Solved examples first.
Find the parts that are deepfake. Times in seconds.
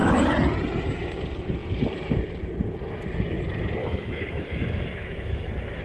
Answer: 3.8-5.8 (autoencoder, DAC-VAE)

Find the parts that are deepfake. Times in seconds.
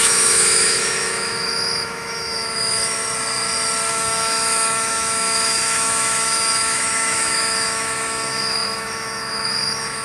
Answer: 0.0-3.0 (autoencoder, DAC-VAE); 3.9-10.0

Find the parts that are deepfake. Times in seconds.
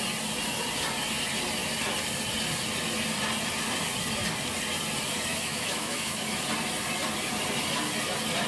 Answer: 5.3-6.4 (autoencoder, DAC-VAE)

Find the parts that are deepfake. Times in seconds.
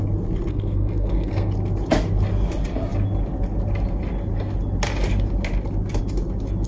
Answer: 0.5-1.5 (codec, SNAC)